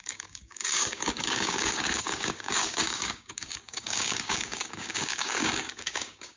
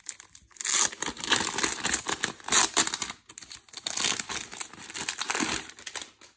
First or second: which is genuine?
second